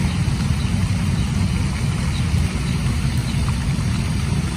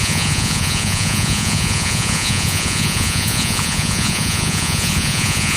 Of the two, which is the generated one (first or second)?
second